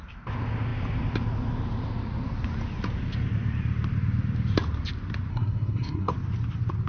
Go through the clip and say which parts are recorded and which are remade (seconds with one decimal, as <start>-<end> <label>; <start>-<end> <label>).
0.0-5.3 recorded; 5.3-6.1 remade; 6.1-6.9 recorded